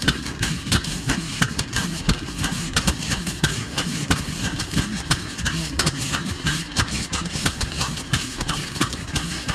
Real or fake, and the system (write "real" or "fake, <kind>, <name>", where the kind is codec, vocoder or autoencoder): fake, codec, SNAC